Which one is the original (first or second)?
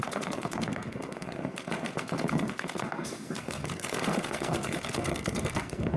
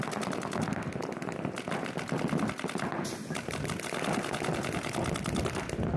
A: second